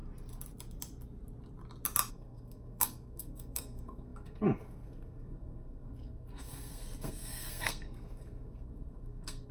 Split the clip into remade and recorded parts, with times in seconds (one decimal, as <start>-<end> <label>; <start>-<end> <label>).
0.0-2.1 recorded; 2.1-9.5 remade